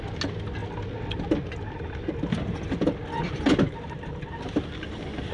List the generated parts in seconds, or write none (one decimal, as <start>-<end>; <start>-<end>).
none